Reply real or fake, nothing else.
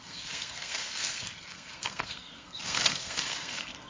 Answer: fake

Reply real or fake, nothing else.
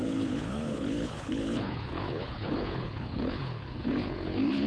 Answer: fake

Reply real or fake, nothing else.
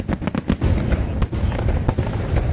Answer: real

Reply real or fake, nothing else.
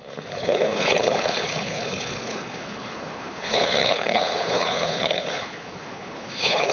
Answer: fake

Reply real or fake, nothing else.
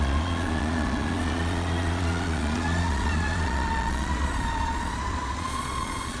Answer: fake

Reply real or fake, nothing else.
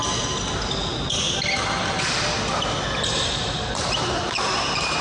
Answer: real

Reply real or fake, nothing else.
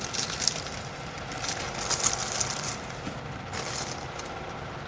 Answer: real